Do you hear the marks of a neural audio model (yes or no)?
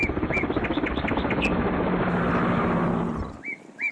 no